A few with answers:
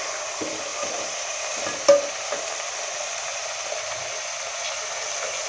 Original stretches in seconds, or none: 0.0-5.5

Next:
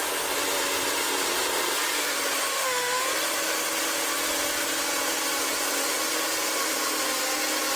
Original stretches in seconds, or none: 0.0-2.5; 3.0-7.8

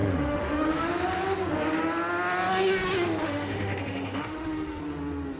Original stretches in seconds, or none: 0.9-3.2; 4.8-5.4